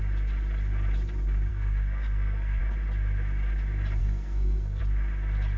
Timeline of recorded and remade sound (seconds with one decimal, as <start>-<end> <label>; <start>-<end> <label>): 0.0-1.5 recorded; 1.5-2.6 remade; 2.6-4.0 recorded; 4.0-4.8 remade; 4.8-5.6 recorded